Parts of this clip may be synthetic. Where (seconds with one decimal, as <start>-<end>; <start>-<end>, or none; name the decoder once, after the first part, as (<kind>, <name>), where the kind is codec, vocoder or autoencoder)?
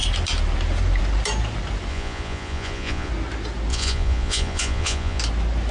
1.9-3.1 (vocoder, Vocos); 3.7-5.2